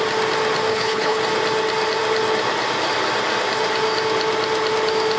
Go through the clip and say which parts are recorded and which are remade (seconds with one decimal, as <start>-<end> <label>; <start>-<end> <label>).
0.0-0.7 recorded; 0.7-1.2 remade; 1.2-5.2 recorded